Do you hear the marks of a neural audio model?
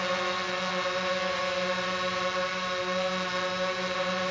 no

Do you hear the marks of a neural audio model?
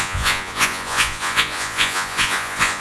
yes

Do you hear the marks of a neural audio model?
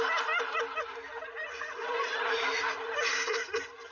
no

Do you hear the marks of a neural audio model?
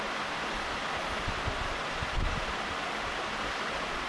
no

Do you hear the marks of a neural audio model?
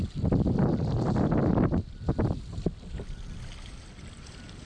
no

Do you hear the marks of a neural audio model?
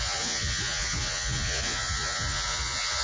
yes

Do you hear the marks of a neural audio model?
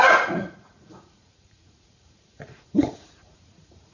yes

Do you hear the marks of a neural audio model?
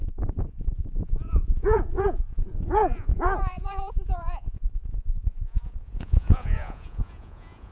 yes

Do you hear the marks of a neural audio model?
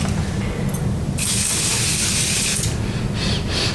no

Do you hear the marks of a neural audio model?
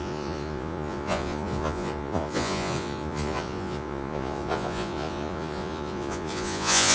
yes